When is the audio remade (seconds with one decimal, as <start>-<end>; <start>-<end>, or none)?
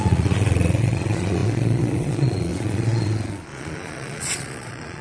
0.0-5.0